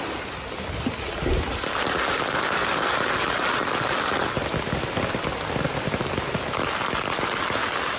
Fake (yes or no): no